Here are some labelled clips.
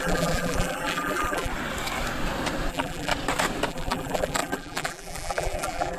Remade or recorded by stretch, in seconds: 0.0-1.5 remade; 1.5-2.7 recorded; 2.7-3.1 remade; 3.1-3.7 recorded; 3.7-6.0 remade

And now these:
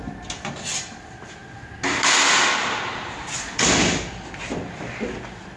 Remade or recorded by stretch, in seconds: 0.0-5.6 recorded